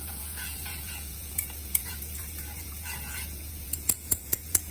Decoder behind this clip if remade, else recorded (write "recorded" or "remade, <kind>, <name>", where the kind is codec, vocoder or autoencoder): remade, vocoder, Vocos